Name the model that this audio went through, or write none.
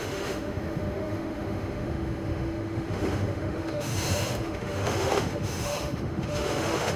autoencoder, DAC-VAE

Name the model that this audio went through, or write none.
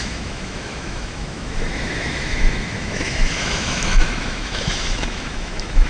autoencoder, DAC-VAE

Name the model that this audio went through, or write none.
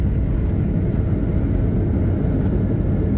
none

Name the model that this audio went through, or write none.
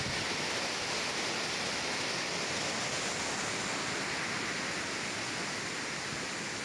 none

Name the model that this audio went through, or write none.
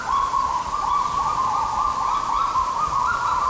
none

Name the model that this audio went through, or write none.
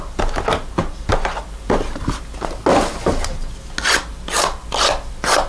none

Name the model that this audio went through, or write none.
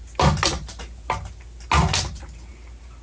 none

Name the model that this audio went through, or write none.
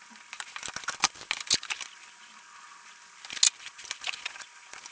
none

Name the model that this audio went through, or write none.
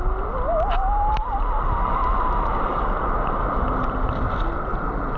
none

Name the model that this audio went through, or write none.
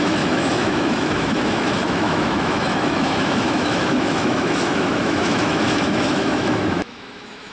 autoencoder, DAC-VAE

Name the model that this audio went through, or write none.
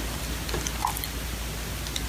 none